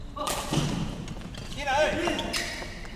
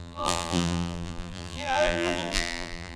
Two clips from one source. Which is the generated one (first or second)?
second